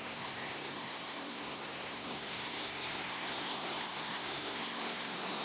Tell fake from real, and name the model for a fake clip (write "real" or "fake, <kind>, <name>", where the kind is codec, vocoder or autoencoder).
fake, codec, SNAC